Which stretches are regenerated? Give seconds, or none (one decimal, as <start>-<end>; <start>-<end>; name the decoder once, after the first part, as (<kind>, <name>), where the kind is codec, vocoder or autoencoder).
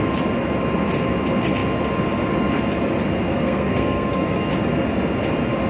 3.3-4.5 (codec, SNAC)